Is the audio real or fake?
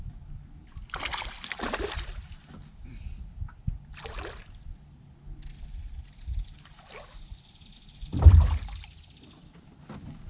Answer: real